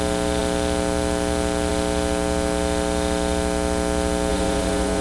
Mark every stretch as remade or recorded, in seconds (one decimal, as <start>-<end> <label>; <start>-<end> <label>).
0.0-4.3 recorded; 4.3-5.0 remade